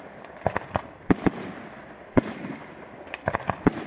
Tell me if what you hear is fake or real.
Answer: fake